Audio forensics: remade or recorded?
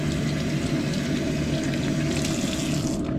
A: recorded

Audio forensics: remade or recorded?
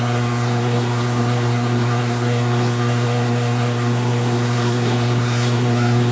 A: remade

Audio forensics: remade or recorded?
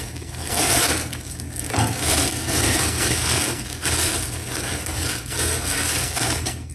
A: remade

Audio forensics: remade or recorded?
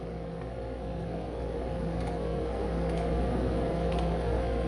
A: remade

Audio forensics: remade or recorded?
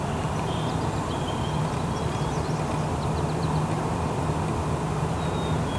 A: recorded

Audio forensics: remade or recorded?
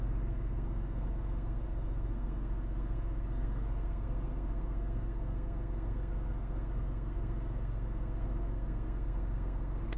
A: remade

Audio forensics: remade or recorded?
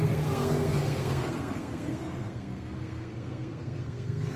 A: remade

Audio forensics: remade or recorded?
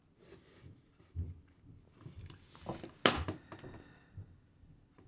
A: recorded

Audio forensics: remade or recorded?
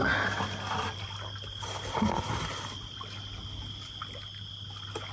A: recorded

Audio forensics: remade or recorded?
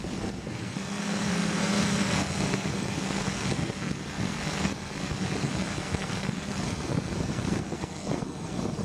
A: remade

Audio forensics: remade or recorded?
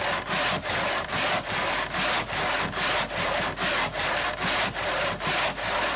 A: recorded